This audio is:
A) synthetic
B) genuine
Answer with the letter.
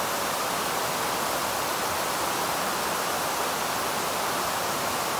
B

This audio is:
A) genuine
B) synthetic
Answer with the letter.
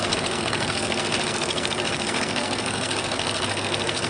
B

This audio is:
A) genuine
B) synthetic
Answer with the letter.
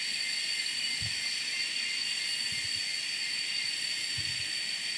A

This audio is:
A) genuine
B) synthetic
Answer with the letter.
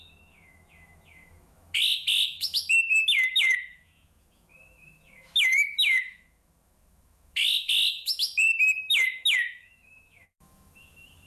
B